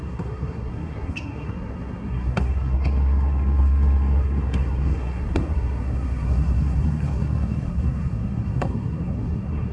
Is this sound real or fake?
fake